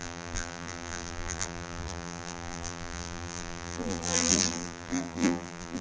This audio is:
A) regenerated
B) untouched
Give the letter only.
A